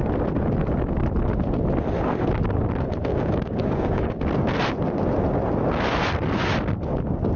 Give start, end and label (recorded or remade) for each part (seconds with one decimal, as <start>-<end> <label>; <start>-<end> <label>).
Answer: 0.0-3.1 recorded; 3.1-4.2 remade; 4.2-7.4 recorded